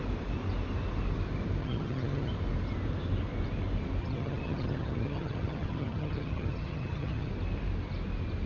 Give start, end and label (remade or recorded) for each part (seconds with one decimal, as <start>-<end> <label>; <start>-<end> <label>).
0.0-1.6 recorded; 1.6-2.3 remade; 2.3-4.0 recorded; 4.0-7.3 remade; 7.3-8.5 recorded